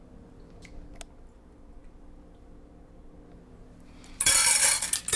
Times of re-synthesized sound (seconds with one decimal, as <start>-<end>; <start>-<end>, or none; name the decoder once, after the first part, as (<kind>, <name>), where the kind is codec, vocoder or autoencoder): none